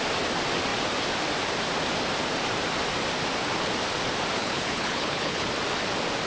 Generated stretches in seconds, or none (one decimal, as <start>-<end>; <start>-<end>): 4.4-5.5